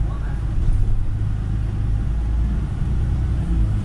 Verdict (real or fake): real